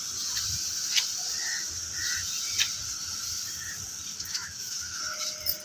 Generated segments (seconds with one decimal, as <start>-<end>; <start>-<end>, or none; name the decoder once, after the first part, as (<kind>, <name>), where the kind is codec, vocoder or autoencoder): 4.1-5.0 (autoencoder, DAC-VAE)